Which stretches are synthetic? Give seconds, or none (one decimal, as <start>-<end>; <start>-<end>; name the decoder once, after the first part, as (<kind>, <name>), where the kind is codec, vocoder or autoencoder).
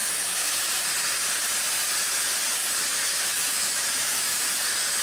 0.0-0.7 (autoencoder, DAC-VAE); 3.0-4.5